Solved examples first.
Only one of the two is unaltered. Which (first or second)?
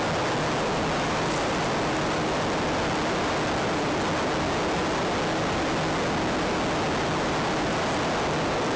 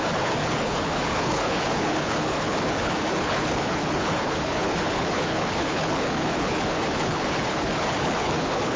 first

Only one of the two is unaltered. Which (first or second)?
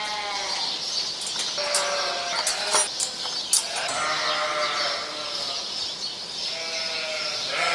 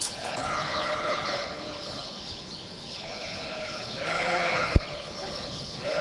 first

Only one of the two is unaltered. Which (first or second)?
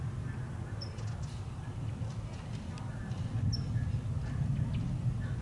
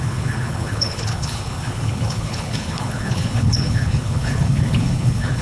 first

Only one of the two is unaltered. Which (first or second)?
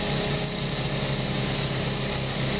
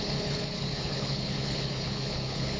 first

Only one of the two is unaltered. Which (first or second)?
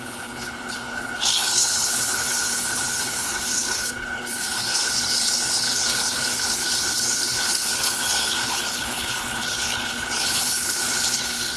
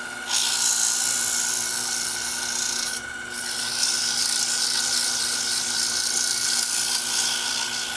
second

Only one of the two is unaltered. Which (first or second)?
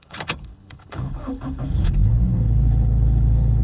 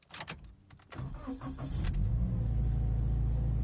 second